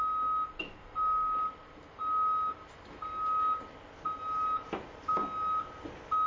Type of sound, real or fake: real